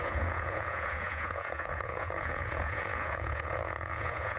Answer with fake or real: fake